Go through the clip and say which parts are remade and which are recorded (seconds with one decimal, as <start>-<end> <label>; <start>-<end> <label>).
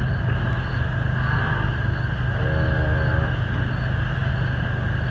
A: 0.0-5.1 recorded